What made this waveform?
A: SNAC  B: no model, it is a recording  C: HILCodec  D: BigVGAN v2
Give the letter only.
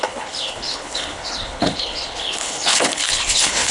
C